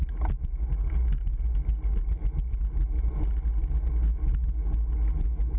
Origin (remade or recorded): recorded